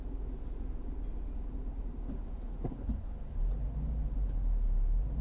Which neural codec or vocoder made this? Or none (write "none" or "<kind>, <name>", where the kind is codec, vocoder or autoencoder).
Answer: none